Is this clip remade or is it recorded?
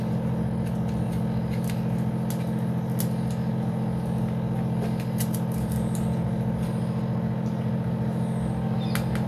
recorded